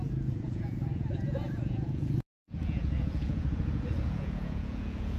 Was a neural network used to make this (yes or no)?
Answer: yes